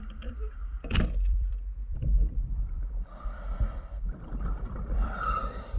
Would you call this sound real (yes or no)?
no